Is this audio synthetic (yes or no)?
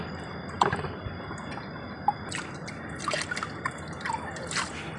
no